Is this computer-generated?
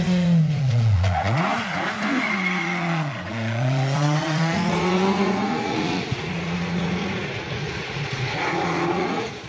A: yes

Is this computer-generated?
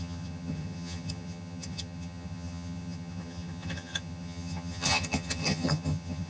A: yes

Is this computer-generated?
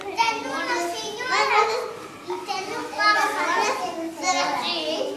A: no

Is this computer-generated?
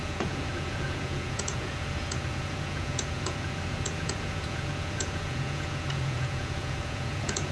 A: yes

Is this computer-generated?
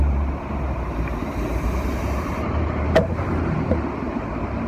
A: yes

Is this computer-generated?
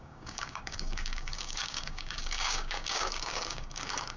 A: yes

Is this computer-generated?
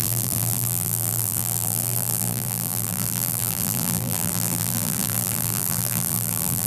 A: yes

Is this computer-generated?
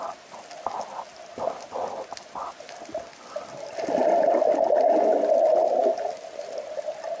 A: no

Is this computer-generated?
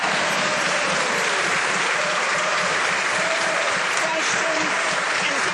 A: yes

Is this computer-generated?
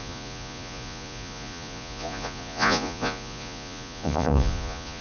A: yes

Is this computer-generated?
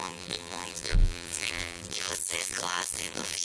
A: yes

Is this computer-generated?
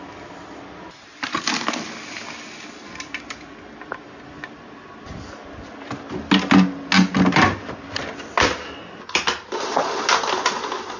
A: no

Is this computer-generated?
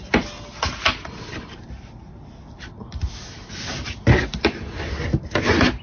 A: no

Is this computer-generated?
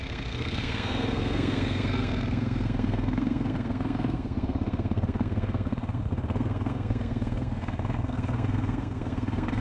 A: yes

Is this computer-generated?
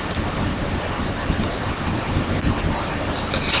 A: no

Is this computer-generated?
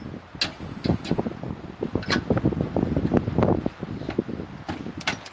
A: no